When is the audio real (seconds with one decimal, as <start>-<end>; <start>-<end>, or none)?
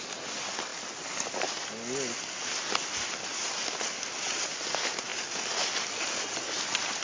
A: 0.0-7.0